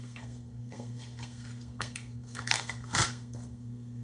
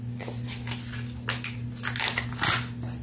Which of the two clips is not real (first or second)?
first